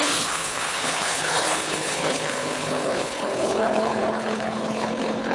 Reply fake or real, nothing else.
fake